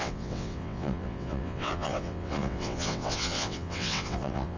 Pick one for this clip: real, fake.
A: fake